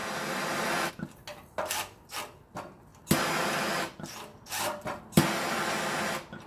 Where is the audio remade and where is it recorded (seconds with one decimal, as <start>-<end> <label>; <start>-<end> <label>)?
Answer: 0.0-6.5 recorded